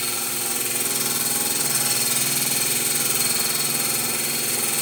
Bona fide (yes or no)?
yes